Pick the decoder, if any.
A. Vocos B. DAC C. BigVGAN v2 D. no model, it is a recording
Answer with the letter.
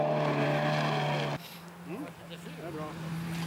D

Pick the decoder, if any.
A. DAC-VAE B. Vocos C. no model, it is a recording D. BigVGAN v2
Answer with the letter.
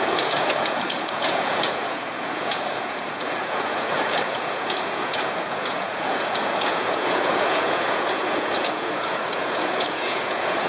B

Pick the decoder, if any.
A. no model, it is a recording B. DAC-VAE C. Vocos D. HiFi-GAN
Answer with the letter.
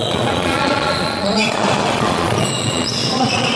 C